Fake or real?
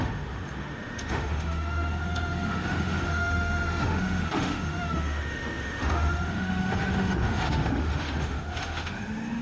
fake